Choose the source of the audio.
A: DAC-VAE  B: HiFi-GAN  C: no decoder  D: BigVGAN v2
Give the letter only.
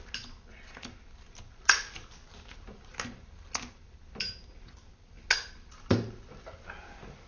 C